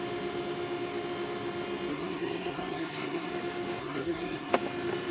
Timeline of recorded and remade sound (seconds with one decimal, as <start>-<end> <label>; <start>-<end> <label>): 0.0-1.9 recorded; 1.9-3.3 remade; 3.3-3.8 recorded; 3.8-4.5 remade; 4.5-5.1 recorded